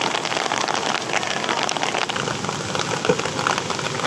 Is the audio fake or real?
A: real